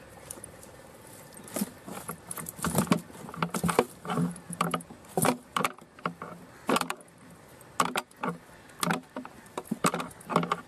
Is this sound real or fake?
real